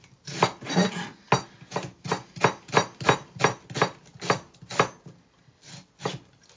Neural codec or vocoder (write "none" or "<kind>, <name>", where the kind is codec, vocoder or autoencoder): none